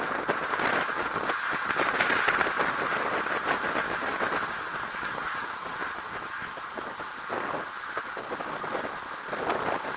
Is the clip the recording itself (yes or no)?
yes